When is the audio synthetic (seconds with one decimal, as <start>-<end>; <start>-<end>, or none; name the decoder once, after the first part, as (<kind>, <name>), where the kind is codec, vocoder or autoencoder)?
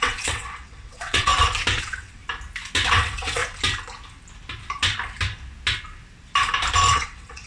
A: 0.0-1.3 (vocoder, WaveNeXt); 1.8-2.2; 2.9-3.4; 6.9-7.5